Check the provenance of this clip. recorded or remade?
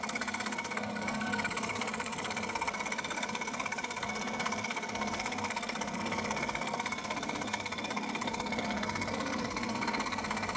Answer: remade